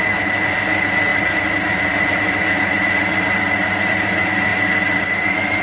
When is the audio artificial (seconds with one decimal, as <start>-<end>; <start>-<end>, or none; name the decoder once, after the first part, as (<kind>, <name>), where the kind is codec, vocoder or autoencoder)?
none